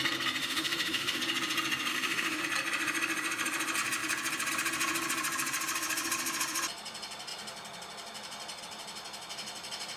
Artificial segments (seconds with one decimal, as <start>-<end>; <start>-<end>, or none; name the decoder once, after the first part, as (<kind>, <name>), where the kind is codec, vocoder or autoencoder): 0.4-1.2 (autoencoder, DAC-VAE); 1.9-2.4

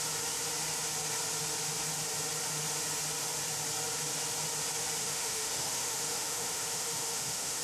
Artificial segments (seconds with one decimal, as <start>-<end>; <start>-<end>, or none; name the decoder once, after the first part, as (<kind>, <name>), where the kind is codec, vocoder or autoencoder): 5.0-7.6 (autoencoder, DAC-VAE)

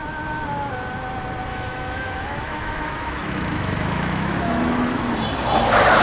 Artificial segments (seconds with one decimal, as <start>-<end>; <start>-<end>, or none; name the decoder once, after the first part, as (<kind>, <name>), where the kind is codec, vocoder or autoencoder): 1.5-5.1 (autoencoder, DAC-VAE)